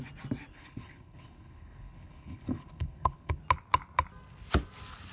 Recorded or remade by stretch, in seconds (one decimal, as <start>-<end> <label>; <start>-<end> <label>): 0.0-0.5 recorded; 0.5-3.4 remade; 3.4-5.1 recorded